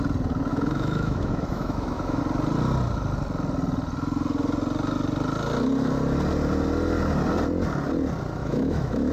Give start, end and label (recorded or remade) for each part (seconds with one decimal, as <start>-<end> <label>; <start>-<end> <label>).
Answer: 0.0-0.5 recorded; 0.5-2.2 remade; 2.2-8.4 recorded; 8.4-9.1 remade